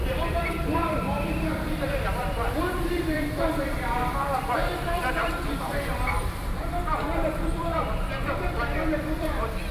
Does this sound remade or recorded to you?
remade